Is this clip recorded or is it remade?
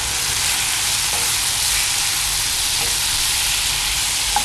recorded